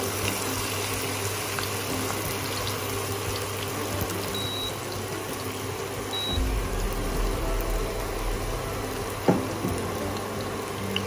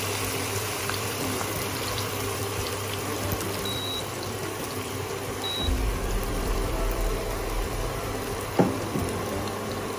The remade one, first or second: second